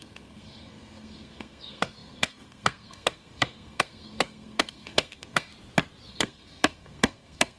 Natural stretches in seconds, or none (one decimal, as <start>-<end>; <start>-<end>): 5.5-6.1